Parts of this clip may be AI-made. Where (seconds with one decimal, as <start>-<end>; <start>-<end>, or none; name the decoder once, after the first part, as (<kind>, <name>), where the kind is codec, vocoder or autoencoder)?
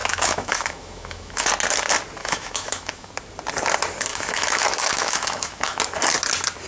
0.0-1.5 (autoencoder, DAC-VAE); 2.2-3.1; 4.1-5.8